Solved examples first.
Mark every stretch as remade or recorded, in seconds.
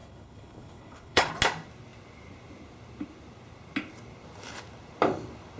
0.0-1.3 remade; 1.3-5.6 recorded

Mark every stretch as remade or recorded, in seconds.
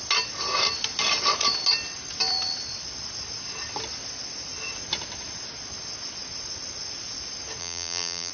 0.0-7.6 recorded; 7.6-8.3 remade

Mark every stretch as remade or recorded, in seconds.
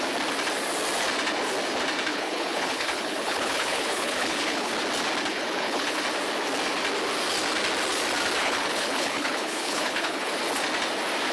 0.0-2.1 recorded; 2.1-4.7 remade; 4.7-5.3 recorded; 5.3-6.0 remade; 6.0-8.4 recorded; 8.4-10.3 remade; 10.3-11.3 recorded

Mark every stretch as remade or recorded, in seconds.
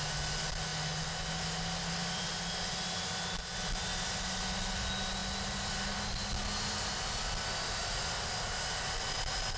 0.0-9.6 recorded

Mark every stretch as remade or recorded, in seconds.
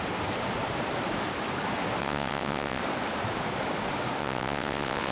0.0-2.0 recorded; 2.0-2.8 remade; 2.8-4.2 recorded; 4.2-5.1 remade